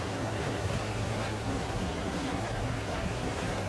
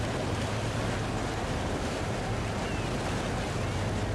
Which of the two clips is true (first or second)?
second